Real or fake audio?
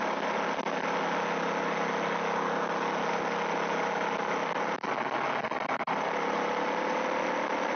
real